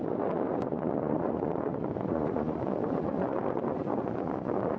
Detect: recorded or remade remade